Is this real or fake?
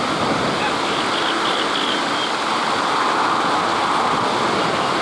real